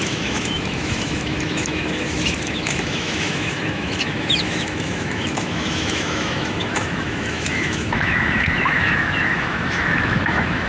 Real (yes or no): no